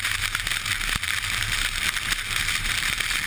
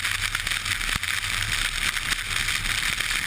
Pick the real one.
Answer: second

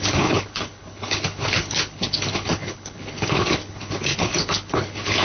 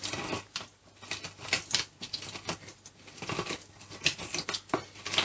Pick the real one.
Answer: second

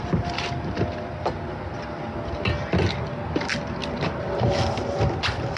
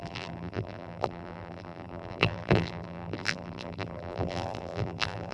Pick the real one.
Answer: first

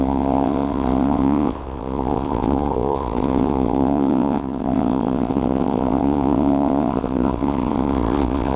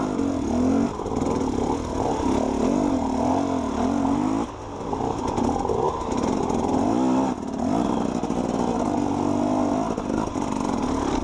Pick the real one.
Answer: second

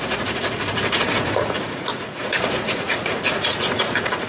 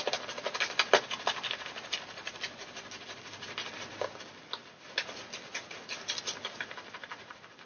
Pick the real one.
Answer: second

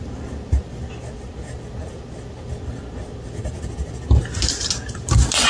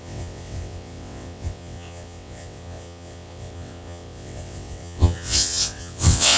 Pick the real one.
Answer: first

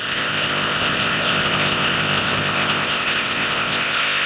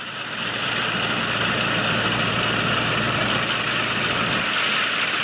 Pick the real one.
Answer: second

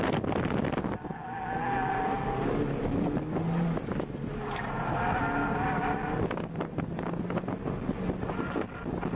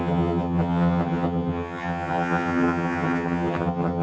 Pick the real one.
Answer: first